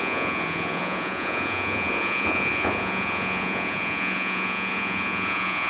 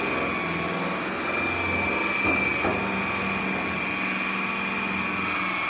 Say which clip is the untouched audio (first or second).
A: second